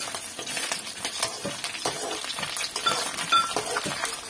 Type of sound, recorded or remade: recorded